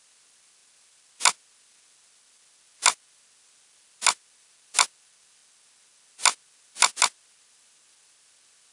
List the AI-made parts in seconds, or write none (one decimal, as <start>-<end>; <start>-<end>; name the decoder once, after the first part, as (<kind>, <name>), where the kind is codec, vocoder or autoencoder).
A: none